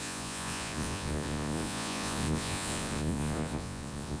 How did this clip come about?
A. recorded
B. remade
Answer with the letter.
B